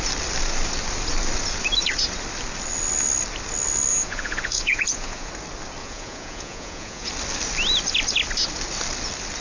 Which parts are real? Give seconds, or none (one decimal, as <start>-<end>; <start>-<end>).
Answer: 0.0-3.9; 5.3-5.8; 7.1-9.4